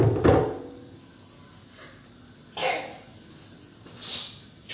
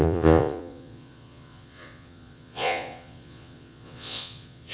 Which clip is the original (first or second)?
first